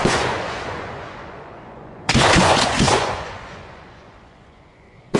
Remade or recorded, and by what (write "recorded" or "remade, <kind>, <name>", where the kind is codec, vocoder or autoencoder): remade, vocoder, Vocos